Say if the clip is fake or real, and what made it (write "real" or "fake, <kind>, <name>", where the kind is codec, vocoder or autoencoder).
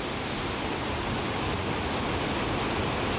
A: real